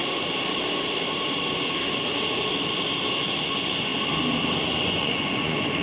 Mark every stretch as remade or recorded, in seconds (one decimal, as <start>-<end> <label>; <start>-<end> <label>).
0.0-3.5 recorded; 3.5-3.9 remade; 3.9-4.6 recorded; 4.6-5.8 remade